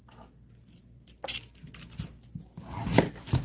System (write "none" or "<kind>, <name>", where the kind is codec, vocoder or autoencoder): none